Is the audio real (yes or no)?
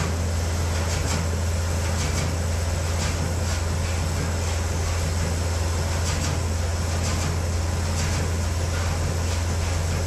yes